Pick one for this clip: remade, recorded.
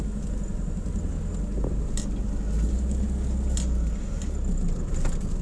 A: recorded